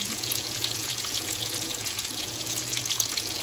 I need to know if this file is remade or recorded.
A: remade